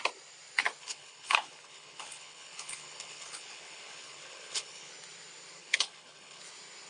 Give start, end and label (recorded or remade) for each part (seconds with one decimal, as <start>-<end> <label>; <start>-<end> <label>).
0.0-0.8 recorded; 0.8-4.9 remade; 4.9-5.6 recorded; 5.6-6.4 remade; 6.4-6.9 recorded